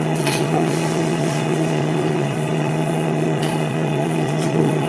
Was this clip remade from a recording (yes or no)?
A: yes